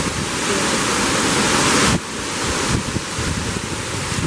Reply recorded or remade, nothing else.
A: recorded